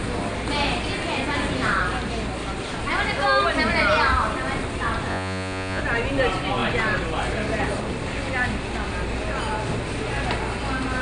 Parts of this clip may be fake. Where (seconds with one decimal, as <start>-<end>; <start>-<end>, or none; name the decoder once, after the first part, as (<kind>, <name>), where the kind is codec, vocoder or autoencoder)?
5.1-5.8 (vocoder, Vocos)